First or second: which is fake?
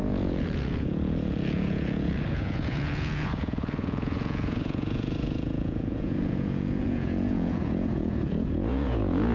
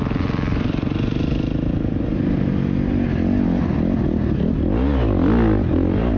first